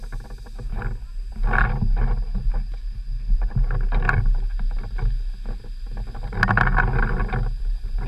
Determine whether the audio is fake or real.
real